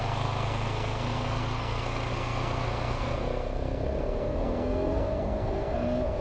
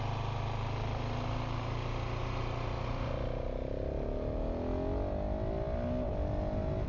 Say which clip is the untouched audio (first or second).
second